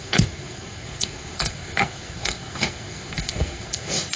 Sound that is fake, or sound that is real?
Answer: fake